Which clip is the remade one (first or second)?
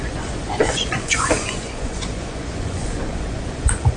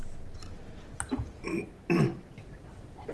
first